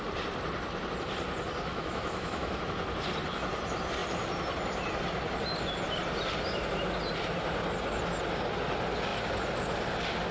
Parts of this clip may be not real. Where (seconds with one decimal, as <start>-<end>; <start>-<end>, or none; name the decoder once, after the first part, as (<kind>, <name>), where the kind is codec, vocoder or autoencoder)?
1.7-2.6 (autoencoder, DAC-VAE)